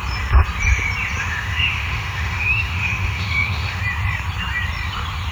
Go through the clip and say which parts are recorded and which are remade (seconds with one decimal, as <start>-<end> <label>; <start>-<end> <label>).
0.0-1.2 recorded; 1.2-3.8 remade; 3.8-5.3 recorded